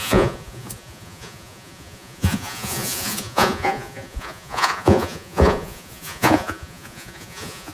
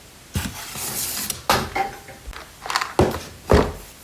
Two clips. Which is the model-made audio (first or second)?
first